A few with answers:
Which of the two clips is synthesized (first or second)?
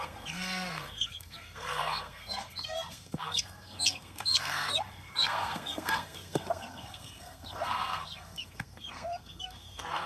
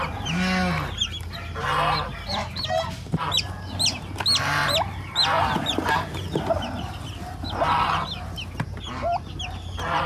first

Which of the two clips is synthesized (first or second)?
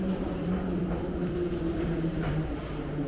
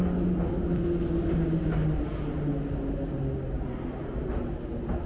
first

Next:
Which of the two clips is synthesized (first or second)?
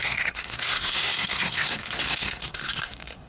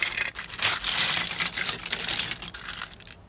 first